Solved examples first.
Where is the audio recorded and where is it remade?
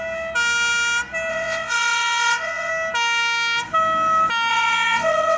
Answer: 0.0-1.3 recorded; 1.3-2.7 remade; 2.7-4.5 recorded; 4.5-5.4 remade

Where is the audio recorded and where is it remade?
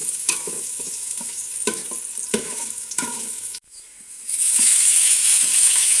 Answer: 0.0-1.8 remade; 1.8-2.3 recorded; 2.3-6.0 remade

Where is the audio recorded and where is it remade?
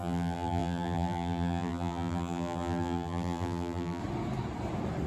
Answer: 0.0-4.0 remade; 4.0-5.1 recorded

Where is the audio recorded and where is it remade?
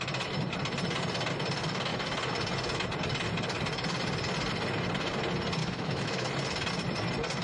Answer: 0.0-5.6 recorded; 5.6-6.3 remade; 6.3-7.4 recorded